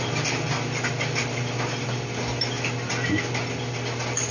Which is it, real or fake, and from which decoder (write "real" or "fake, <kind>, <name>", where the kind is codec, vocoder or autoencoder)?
real